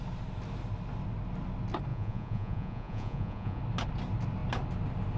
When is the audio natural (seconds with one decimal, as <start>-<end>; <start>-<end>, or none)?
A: 0.0-1.9; 3.6-5.2